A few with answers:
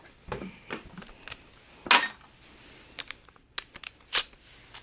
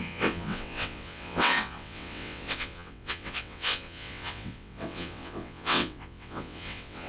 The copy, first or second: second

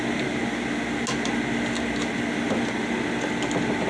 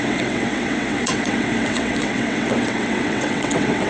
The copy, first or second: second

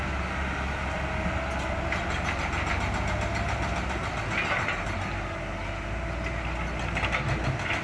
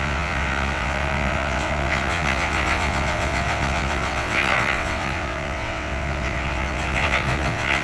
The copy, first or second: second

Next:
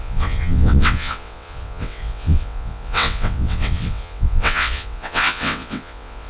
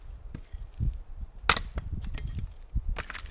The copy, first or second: first